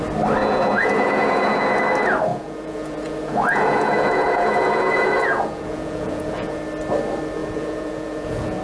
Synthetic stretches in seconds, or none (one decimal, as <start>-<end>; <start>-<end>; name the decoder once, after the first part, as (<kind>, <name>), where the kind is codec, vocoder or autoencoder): 0.4-1.8 (vocoder, Vocos); 2.3-6.6; 7.4-8.6